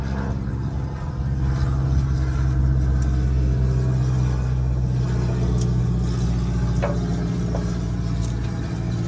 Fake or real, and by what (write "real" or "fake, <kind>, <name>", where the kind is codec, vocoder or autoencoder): real